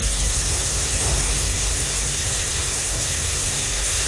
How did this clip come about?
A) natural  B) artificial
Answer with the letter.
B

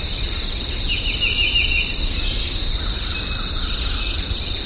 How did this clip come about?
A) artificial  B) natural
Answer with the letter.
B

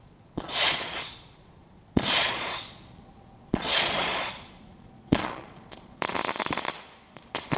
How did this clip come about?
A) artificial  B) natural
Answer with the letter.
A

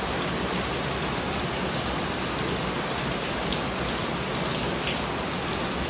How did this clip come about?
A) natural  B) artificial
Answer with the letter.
A